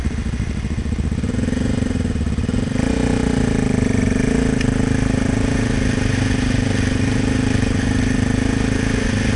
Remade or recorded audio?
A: recorded